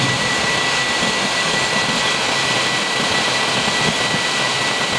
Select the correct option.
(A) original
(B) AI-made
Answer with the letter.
A